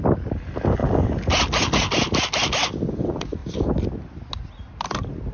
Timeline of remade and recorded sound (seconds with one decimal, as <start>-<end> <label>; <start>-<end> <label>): 0.0-5.3 recorded